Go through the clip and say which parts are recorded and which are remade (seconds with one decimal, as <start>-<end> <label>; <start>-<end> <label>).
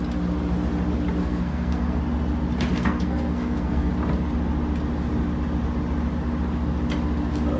0.0-1.2 recorded; 1.2-2.0 remade; 2.0-2.7 recorded; 2.7-3.9 remade; 3.9-7.6 recorded